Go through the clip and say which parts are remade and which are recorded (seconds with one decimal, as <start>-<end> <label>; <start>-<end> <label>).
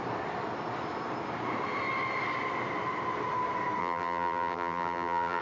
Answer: 0.0-3.8 recorded; 3.8-5.4 remade